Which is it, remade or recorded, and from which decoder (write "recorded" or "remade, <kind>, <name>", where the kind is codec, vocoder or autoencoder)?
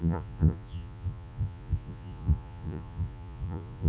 remade, vocoder, Vocos